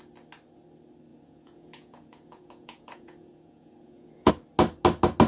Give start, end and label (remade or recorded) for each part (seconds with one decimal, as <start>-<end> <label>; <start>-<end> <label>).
0.0-1.1 recorded; 1.1-4.3 remade; 4.3-5.3 recorded